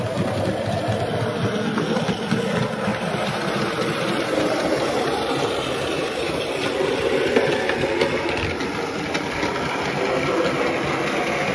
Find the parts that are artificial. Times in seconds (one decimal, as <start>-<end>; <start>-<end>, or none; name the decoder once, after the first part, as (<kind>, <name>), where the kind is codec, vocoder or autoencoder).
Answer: 2.9-6.5 (vocoder, BigVGAN v2)